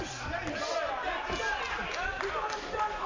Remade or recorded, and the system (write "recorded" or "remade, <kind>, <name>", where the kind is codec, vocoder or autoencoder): recorded